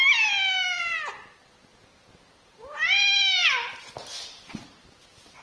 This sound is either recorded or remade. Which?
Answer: recorded